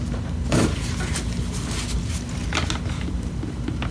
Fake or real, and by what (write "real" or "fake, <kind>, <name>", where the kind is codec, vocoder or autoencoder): real